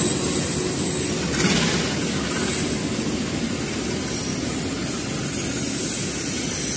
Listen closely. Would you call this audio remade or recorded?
recorded